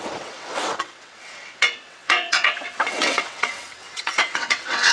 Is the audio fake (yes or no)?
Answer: yes